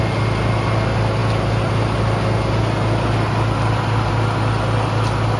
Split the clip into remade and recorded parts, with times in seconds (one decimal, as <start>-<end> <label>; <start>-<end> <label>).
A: 0.0-5.4 recorded